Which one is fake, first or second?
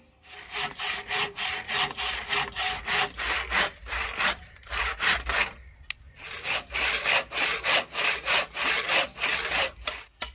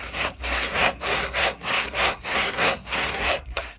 second